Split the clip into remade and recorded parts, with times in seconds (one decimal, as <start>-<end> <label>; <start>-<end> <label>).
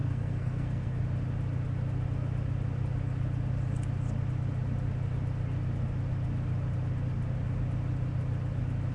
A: 0.0-1.0 remade; 1.0-8.9 recorded